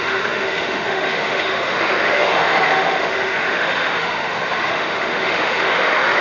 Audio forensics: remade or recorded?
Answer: remade